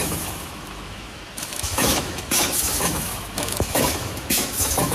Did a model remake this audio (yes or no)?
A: yes